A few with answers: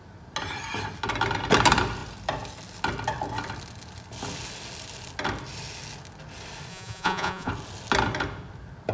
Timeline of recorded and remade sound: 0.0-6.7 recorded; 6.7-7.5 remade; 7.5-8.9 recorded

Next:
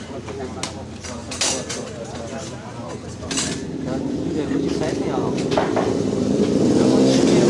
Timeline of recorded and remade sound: 0.0-3.6 recorded; 3.6-6.4 remade; 6.4-7.5 recorded

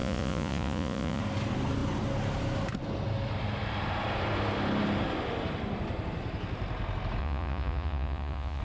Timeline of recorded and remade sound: 0.0-1.2 remade; 1.2-7.2 recorded; 7.2-8.6 remade

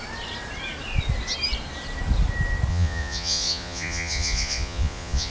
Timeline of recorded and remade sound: 0.0-2.7 recorded; 2.7-5.3 remade

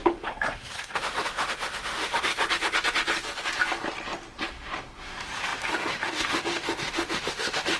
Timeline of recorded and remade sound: 0.0-2.3 remade; 2.3-4.5 recorded; 4.5-7.8 remade

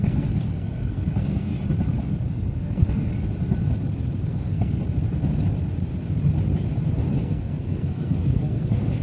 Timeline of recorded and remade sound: 0.0-1.5 remade; 1.5-2.3 recorded; 2.3-3.1 remade; 3.1-4.2 recorded; 4.2-4.8 remade; 4.8-7.2 recorded; 7.2-9.0 remade

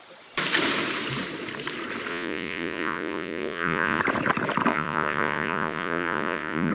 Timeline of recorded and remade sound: 0.0-2.1 recorded; 2.1-4.0 remade; 4.0-4.7 recorded; 4.7-6.7 remade